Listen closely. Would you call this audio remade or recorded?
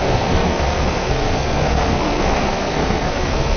remade